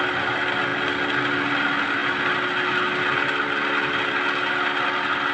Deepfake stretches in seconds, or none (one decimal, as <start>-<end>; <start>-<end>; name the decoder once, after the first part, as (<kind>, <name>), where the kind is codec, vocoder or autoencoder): none